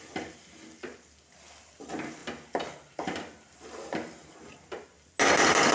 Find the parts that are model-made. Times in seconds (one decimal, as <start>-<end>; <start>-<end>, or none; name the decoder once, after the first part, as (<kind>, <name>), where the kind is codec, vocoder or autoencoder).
none